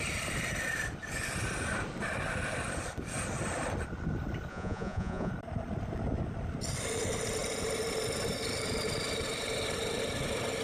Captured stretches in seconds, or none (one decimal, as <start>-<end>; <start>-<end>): 0.0-4.5; 5.3-10.6

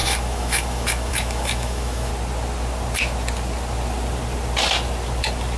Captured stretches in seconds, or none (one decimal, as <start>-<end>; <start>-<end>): 2.1-5.6